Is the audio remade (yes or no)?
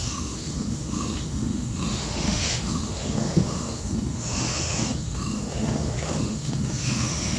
yes